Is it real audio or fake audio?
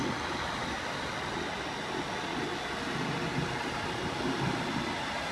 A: real